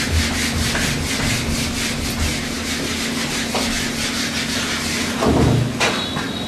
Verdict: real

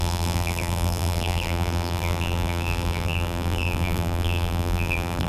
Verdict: fake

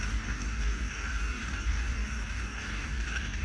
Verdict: fake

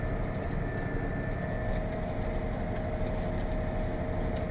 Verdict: real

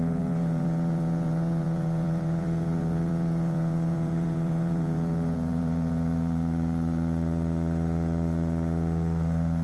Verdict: fake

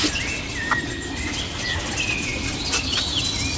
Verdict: real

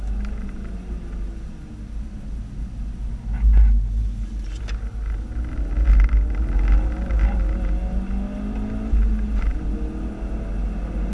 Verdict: real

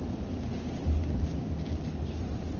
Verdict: real